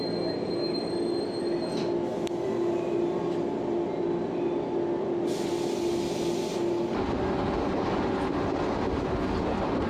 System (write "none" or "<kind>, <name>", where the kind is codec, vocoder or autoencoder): none